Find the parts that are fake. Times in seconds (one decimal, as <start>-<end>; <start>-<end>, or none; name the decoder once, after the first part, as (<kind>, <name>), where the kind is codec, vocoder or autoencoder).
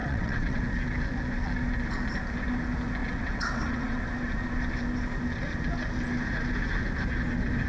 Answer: 0.0-0.6 (vocoder, WaveNeXt); 3.0-4.0